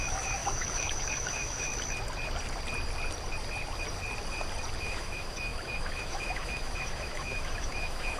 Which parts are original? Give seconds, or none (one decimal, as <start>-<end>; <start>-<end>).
1.7-4.8